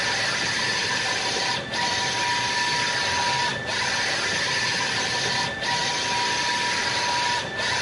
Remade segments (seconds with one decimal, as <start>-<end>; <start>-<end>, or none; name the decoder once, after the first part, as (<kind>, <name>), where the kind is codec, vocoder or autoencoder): none